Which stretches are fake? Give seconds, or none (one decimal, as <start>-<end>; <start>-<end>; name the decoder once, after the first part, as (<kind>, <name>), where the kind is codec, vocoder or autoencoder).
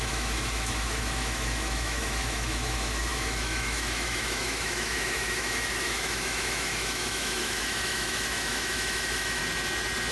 0.0-9.4 (autoencoder, DAC-VAE)